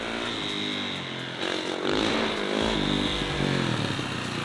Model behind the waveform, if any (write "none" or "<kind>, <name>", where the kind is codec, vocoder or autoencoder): none